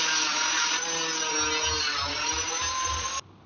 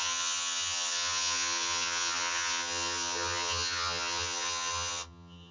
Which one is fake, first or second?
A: second